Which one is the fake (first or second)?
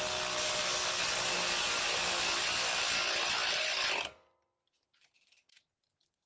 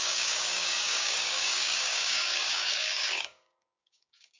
second